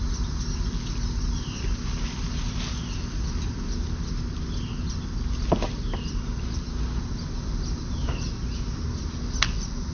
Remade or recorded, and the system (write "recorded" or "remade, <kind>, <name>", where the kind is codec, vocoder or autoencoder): recorded